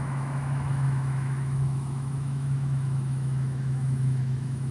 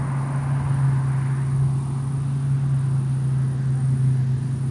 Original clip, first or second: second